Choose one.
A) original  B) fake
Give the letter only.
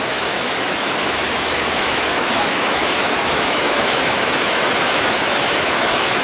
B